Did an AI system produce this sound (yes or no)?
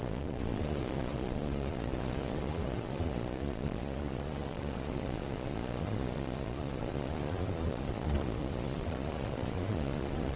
yes